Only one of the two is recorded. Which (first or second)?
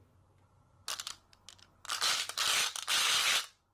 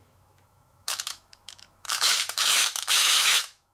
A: first